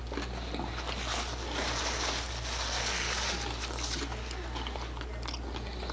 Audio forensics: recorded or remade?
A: recorded